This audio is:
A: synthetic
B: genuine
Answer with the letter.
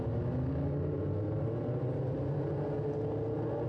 B